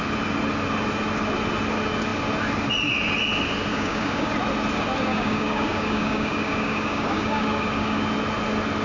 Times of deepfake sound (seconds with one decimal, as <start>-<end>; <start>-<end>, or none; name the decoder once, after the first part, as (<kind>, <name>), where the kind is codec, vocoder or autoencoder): 3.7-4.3 (codec, DAC); 5.1-8.0